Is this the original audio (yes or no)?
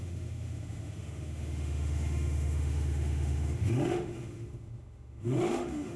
no